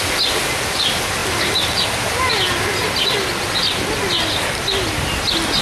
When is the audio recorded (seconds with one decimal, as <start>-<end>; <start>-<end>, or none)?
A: 0.0-5.6